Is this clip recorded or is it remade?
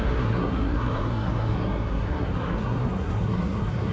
remade